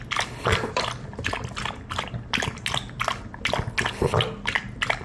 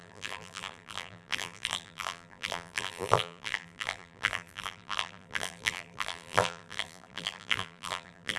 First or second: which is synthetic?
second